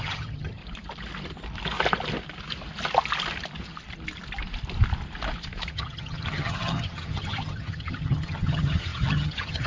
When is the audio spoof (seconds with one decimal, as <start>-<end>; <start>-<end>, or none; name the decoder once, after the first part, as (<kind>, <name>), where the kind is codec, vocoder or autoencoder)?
0.0-0.6 (vocoder, HiFi-GAN); 5.7-9.7